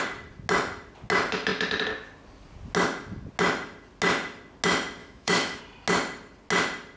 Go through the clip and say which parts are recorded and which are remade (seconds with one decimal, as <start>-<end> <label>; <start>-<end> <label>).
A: 0.0-5.0 recorded; 5.0-5.6 remade; 5.6-7.0 recorded